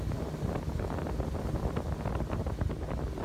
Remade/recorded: recorded